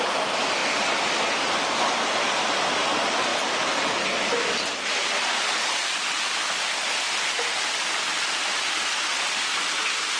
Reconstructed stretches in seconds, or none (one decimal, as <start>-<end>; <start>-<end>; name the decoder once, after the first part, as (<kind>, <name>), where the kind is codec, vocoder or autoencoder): none